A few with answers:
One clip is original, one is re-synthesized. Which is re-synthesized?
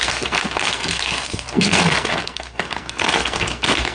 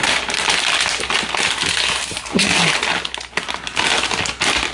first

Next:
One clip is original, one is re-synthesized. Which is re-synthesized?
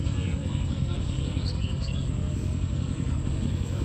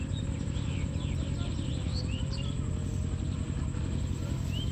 first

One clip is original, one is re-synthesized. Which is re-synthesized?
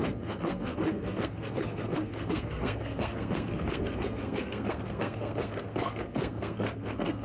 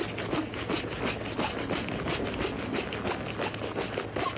first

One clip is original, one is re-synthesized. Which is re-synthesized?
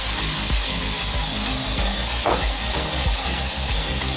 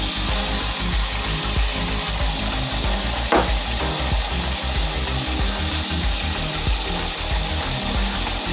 first